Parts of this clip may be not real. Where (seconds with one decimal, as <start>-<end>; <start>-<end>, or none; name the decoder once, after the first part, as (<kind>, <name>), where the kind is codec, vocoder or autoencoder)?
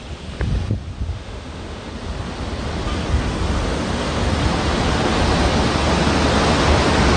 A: 1.1-1.9 (autoencoder, DAC-VAE)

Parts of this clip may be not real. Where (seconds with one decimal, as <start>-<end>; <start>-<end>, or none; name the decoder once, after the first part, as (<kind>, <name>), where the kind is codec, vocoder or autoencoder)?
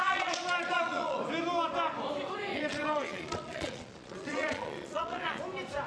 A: 0.0-1.2 (vocoder, Vocos); 2.5-5.4